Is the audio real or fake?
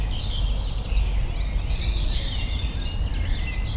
real